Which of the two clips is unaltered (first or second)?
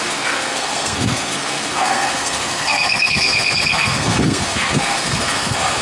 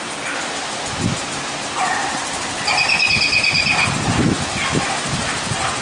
second